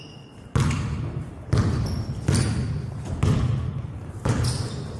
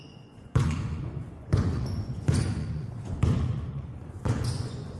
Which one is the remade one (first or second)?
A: second